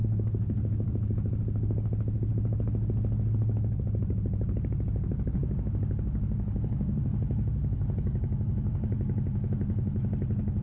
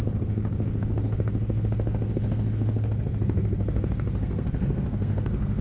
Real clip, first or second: first